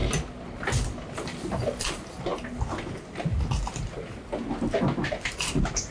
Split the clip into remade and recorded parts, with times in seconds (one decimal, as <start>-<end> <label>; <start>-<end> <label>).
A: 0.0-5.9 recorded